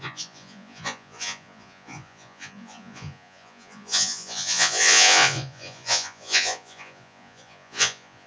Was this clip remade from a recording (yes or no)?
yes